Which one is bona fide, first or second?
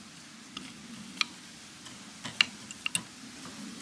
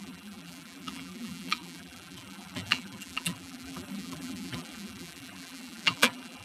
first